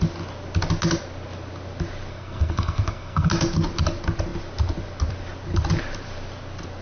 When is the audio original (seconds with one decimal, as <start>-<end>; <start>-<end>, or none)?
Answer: 0.0-2.1; 3.3-6.8

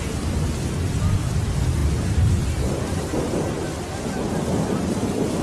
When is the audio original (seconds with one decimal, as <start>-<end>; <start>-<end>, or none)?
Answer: 0.0-5.4